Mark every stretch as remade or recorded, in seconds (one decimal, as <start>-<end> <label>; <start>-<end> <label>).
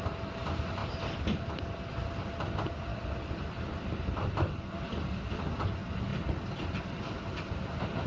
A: 0.0-8.1 recorded